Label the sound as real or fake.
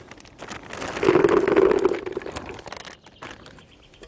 real